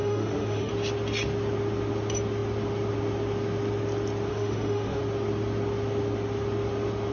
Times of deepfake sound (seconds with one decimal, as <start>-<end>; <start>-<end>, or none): 0.0-0.7; 4.3-5.0

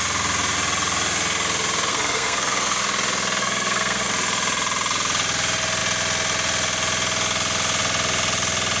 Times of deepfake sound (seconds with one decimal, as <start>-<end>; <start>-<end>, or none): 1.9-2.8; 3.4-4.1

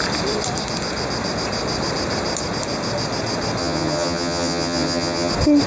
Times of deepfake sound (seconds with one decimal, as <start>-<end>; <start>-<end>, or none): 3.6-5.3

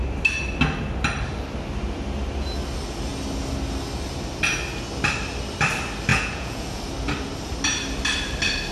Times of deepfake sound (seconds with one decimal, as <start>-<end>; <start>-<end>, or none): 6.1-6.8

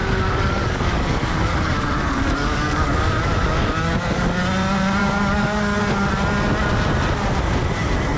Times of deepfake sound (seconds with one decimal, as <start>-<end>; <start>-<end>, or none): 0.0-4.4; 5.0-5.8